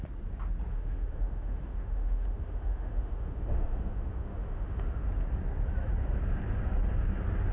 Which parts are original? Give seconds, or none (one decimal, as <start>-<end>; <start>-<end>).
0.0-0.7; 5.1-7.5